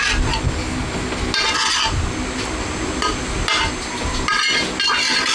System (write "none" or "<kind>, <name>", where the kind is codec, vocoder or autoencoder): none